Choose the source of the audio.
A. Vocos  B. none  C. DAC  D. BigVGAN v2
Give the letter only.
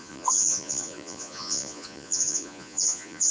A